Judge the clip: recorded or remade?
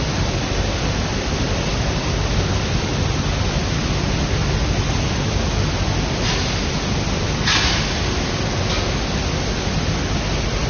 recorded